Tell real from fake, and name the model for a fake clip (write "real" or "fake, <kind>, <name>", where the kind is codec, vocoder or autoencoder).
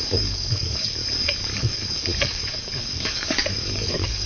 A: fake, codec, DAC